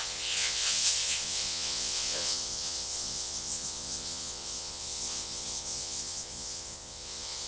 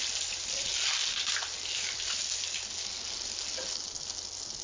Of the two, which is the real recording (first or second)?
second